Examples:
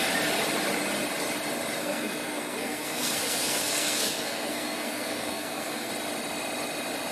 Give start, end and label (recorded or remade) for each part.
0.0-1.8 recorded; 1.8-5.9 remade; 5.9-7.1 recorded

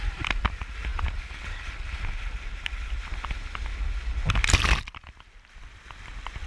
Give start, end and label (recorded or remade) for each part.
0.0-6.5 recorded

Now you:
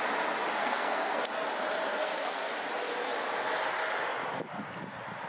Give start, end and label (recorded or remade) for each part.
0.0-0.6 recorded; 0.6-1.2 remade; 1.2-1.9 recorded; 1.9-2.5 remade; 2.5-5.3 recorded

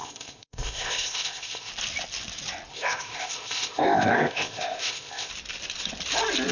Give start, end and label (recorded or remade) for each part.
0.0-1.7 remade; 1.7-2.7 recorded; 2.7-5.3 remade; 5.3-6.5 recorded

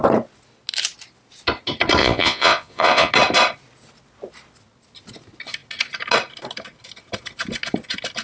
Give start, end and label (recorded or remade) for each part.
0.0-2.0 recorded; 2.0-3.1 remade; 3.1-8.2 recorded